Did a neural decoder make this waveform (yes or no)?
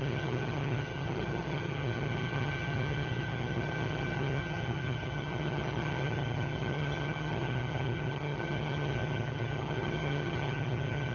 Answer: yes